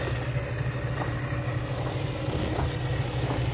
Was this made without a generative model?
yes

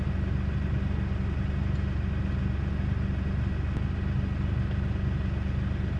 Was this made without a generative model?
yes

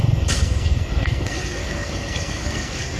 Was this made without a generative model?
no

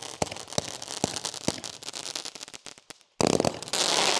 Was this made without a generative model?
yes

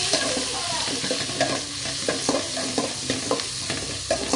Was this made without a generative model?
yes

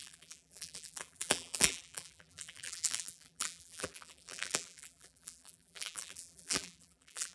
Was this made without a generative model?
no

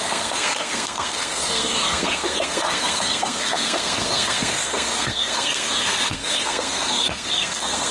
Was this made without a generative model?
no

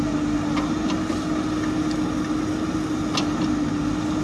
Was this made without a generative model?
yes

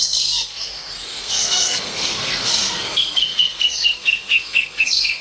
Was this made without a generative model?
no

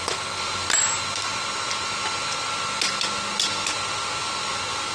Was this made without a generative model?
yes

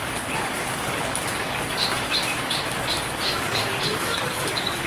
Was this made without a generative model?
no